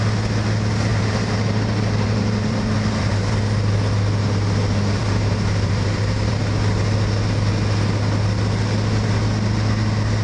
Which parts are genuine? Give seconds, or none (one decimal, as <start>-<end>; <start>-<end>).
0.0-0.9; 3.4-5.0; 6.3-10.2